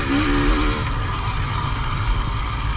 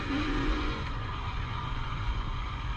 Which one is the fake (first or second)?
second